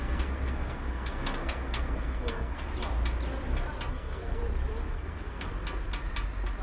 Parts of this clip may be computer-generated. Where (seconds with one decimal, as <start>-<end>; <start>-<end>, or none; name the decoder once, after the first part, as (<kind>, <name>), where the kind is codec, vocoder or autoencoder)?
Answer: 0.0-2.7 (codec, SNAC); 3.9-4.4; 4.9-5.5